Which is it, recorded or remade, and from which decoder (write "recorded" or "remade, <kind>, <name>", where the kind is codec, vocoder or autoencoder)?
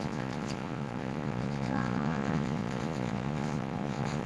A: remade, vocoder, Vocos